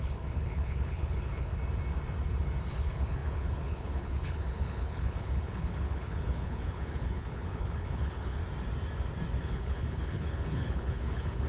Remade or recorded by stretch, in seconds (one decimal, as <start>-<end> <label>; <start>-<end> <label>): 0.0-1.5 remade; 1.5-2.7 recorded; 2.7-8.4 remade; 8.4-9.4 recorded; 9.4-11.5 remade